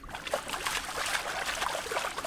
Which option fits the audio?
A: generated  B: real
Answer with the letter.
B